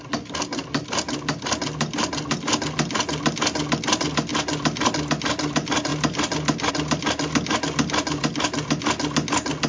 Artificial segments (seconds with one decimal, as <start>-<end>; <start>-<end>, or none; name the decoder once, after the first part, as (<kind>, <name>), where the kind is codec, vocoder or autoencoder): none